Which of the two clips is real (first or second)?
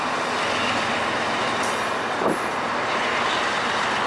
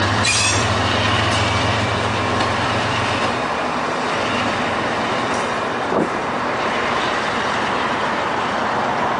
first